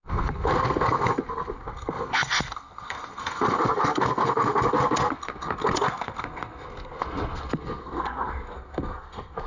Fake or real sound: fake